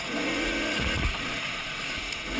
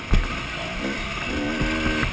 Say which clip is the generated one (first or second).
first